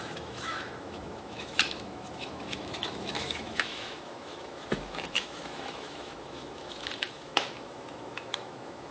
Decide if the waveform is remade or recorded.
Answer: remade